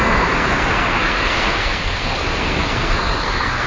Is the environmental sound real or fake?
fake